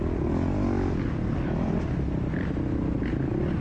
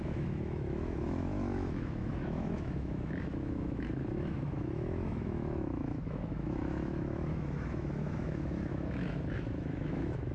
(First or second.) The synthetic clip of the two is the second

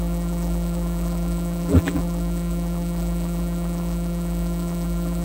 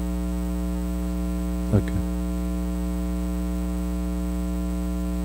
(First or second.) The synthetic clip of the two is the first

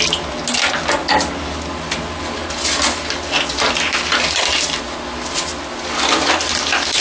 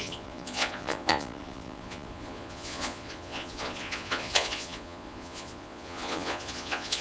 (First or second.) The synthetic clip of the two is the second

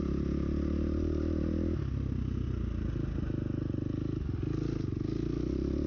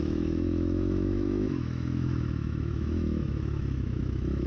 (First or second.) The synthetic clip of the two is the second